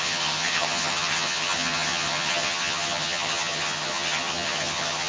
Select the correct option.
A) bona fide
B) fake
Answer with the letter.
B